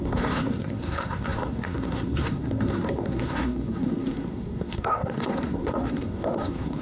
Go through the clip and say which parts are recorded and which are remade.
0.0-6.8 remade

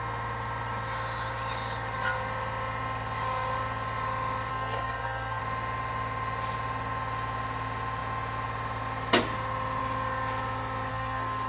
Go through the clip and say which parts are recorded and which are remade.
0.0-4.5 recorded; 4.5-5.4 remade; 5.4-10.9 recorded; 10.9-11.5 remade

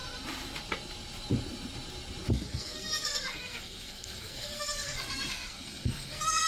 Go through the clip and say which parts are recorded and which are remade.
0.0-2.3 recorded; 2.3-6.5 remade

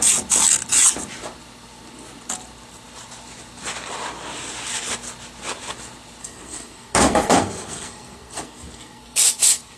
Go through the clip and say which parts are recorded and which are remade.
0.0-6.2 recorded; 6.2-9.8 remade

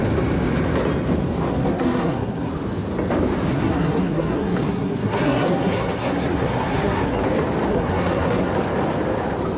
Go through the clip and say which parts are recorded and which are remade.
0.0-1.5 recorded; 1.5-2.5 remade; 2.5-3.5 recorded; 3.5-7.2 remade; 7.2-7.7 recorded; 7.7-8.5 remade; 8.5-9.6 recorded

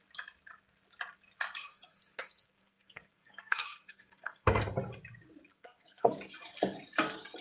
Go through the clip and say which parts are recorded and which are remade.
0.0-1.6 recorded; 1.6-4.6 remade; 4.6-5.5 recorded; 5.5-6.2 remade; 6.2-7.4 recorded

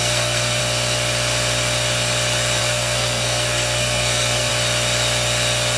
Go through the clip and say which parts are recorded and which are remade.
0.0-0.6 remade; 0.6-2.6 recorded; 2.6-4.5 remade; 4.5-5.8 recorded